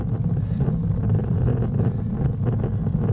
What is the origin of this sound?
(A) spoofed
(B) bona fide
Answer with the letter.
B